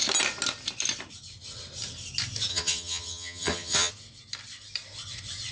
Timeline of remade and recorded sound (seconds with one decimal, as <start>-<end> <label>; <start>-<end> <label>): 0.0-2.5 recorded; 2.5-3.9 remade; 3.9-5.5 recorded